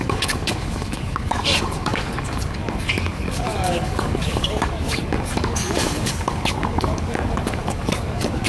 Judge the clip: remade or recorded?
remade